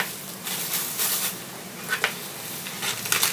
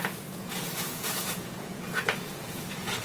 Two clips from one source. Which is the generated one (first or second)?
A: second